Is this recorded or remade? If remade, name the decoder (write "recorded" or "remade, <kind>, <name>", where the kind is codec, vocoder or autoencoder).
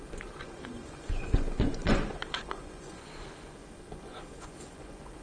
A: remade, vocoder, Vocos